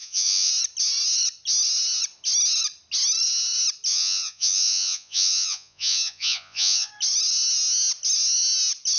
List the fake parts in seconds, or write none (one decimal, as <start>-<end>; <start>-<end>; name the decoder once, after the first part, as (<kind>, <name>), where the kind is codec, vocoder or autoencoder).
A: 0.0-0.5 (vocoder, Vocos); 3.9-6.9